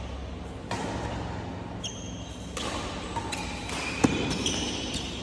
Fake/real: real